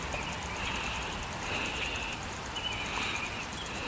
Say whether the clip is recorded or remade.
recorded